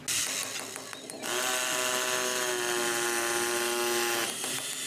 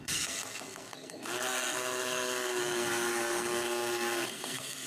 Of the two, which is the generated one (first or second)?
second